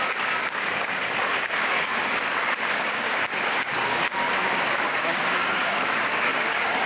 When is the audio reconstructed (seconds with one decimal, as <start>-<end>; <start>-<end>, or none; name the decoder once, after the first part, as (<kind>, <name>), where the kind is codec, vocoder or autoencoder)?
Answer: 0.0-6.9 (codec, DAC)